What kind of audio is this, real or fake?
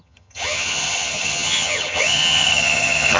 fake